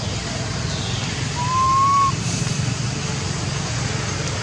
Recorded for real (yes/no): yes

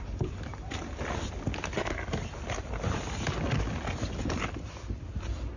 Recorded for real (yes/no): yes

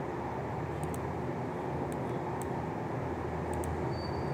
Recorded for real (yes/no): yes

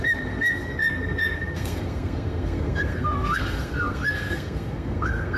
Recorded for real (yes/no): no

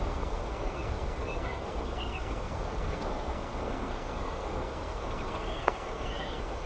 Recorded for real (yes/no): no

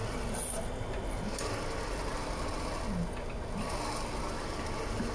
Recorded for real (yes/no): yes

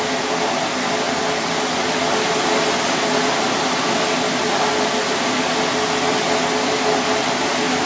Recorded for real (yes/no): yes